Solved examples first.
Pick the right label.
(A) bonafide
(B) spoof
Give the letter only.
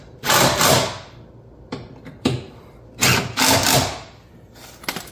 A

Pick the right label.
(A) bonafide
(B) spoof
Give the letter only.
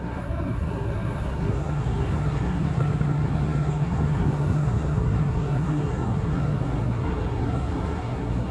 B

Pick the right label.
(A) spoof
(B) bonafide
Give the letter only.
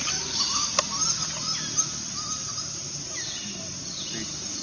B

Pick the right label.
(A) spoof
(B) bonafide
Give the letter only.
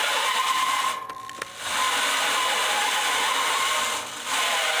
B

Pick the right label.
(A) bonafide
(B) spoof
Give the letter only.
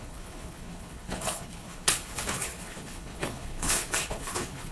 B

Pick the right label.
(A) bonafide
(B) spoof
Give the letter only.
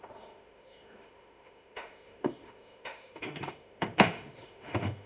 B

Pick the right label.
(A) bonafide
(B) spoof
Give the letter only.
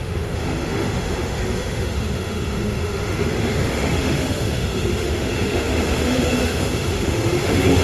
B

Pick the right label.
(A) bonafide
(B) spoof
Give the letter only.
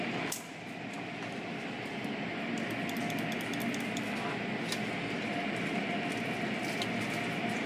A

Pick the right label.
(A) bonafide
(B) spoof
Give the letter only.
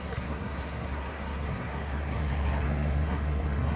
B